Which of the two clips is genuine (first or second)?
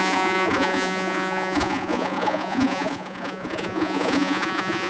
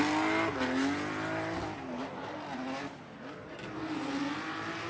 second